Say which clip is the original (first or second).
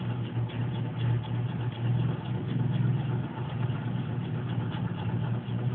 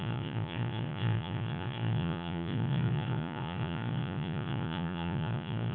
first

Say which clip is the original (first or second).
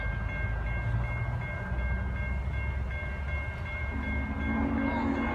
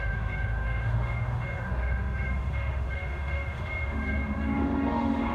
first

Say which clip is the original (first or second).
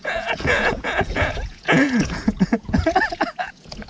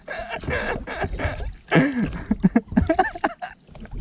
second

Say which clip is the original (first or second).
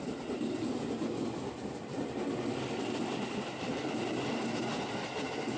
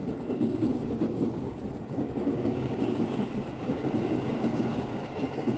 first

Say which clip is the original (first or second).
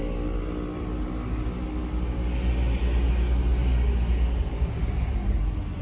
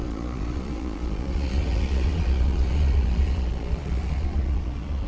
first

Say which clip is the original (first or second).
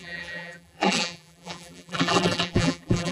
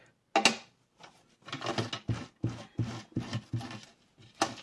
second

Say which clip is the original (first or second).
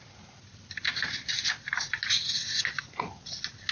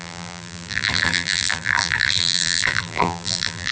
first